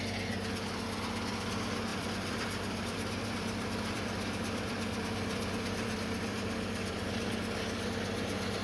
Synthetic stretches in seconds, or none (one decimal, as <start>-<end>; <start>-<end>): 1.9-7.1